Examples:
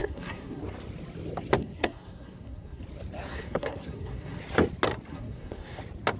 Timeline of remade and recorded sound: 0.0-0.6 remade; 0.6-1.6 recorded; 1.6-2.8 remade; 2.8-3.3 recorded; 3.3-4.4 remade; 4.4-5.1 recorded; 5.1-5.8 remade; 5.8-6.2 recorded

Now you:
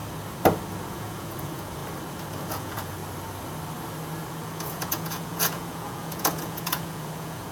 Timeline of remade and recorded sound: 0.0-0.9 recorded; 0.9-1.8 remade; 1.8-2.5 recorded; 2.5-3.0 remade; 3.0-4.3 recorded; 4.3-7.5 remade

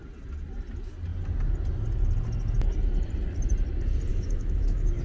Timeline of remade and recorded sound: 0.0-4.1 recorded; 4.1-5.0 remade

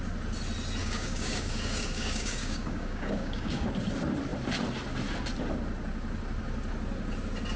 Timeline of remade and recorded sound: 0.0-0.8 recorded; 0.8-3.7 remade; 3.7-7.6 recorded